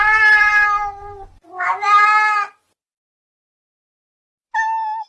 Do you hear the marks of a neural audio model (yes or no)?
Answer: no